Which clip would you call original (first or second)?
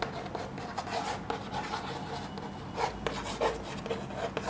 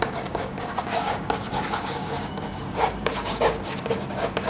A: first